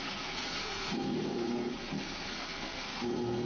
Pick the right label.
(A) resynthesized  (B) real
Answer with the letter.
A